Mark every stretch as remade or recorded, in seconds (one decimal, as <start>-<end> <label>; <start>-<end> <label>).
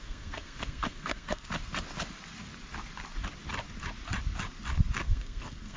0.0-1.5 remade; 1.5-5.0 recorded; 5.0-5.8 remade